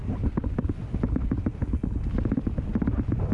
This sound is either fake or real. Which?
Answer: real